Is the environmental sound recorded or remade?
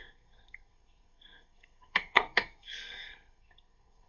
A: remade